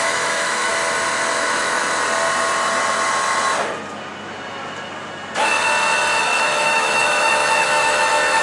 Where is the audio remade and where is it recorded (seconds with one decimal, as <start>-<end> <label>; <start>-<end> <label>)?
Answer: 0.0-0.7 remade; 0.7-1.3 recorded; 1.3-1.8 remade; 1.8-6.2 recorded; 6.2-8.4 remade